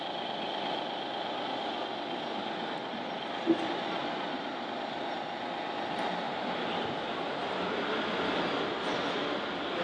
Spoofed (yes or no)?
no